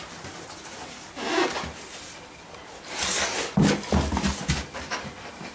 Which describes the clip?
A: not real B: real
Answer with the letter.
B